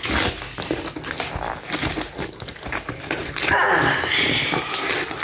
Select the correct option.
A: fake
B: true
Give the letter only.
B